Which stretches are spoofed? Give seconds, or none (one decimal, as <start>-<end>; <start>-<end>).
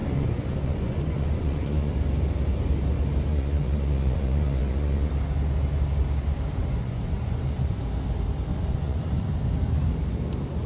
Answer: 0.0-1.9; 3.3-5.1; 6.6-7.8; 8.5-9.2